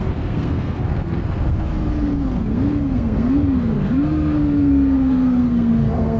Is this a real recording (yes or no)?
no